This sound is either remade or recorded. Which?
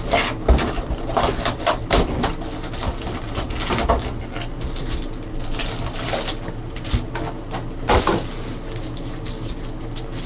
recorded